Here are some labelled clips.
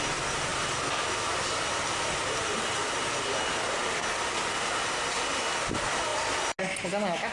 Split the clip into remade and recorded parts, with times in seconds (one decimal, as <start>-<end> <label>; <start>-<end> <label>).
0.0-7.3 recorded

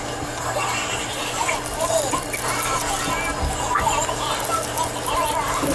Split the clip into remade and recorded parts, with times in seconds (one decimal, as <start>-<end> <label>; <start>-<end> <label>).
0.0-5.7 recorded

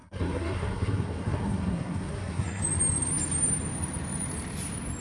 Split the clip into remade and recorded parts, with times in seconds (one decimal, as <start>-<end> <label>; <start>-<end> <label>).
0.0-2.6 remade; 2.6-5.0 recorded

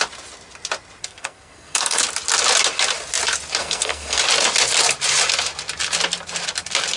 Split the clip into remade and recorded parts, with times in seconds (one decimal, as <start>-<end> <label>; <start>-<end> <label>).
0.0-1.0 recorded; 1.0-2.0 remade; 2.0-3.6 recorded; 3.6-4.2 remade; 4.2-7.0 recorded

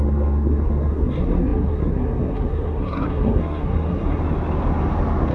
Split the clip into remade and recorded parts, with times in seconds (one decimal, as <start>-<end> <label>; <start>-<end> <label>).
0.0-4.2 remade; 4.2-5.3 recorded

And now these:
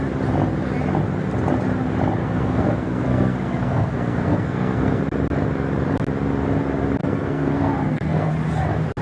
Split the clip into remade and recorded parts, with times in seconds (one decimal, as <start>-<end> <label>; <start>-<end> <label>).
0.0-2.2 recorded; 2.2-5.0 remade; 5.0-7.0 recorded; 7.0-8.3 remade; 8.3-9.0 recorded

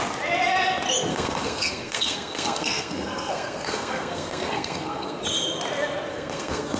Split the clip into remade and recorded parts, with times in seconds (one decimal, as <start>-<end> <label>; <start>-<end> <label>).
0.0-1.1 recorded; 1.1-5.2 remade; 5.2-6.1 recorded; 6.1-6.8 remade

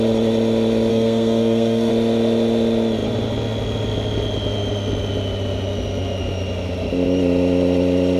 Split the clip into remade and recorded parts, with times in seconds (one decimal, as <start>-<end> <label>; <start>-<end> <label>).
0.0-0.9 recorded; 0.9-1.9 remade; 1.9-8.2 recorded